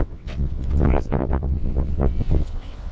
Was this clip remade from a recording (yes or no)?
yes